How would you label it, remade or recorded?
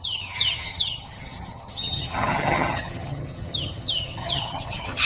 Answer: remade